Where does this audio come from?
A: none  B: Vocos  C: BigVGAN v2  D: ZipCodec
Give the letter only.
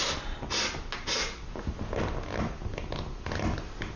A